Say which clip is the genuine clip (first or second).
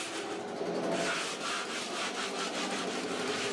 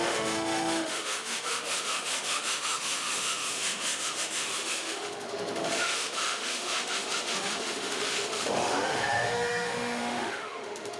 first